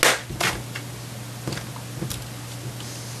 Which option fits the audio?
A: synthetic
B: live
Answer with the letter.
B